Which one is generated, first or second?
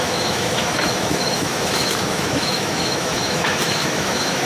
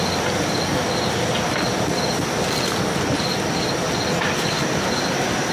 first